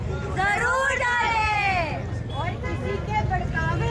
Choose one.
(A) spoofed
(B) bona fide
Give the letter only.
B